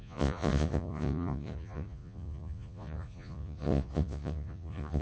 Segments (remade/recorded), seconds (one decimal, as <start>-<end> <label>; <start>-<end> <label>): 0.0-5.0 remade

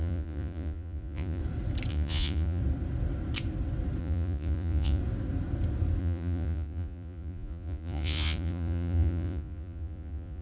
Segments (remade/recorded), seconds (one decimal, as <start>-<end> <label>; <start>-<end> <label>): 0.0-1.4 remade; 1.4-1.9 recorded; 1.9-2.6 remade; 2.6-4.0 recorded; 4.0-5.0 remade; 5.0-6.0 recorded; 6.0-10.4 remade

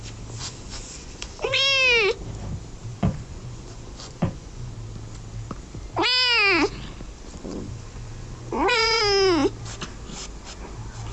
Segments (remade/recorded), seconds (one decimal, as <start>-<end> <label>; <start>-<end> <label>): 0.0-0.4 recorded; 0.4-1.5 remade; 1.5-2.9 recorded; 2.9-4.7 remade; 4.7-7.3 recorded; 7.3-9.0 remade; 9.0-11.1 recorded

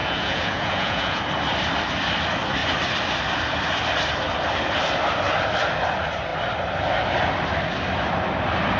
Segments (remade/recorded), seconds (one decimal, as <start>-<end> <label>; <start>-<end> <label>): 0.0-1.2 remade; 1.2-8.8 recorded

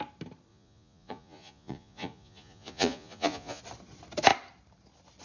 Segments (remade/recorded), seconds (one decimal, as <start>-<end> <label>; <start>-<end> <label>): 0.0-0.5 recorded; 0.5-3.6 remade; 3.6-5.2 recorded

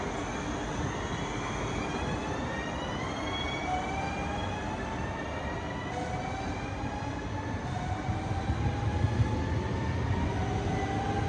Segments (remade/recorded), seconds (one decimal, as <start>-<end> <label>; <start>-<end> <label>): 0.0-11.3 recorded

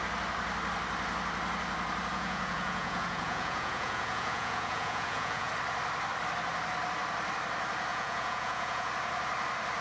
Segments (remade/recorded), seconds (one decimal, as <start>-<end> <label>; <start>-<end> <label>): 0.0-2.1 recorded; 2.1-5.5 remade; 5.5-7.9 recorded; 7.9-8.9 remade; 8.9-9.8 recorded

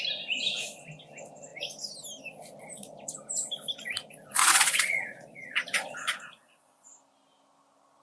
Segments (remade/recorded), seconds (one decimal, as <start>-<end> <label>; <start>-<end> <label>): 0.0-4.4 recorded; 4.4-6.9 remade; 6.9-8.0 recorded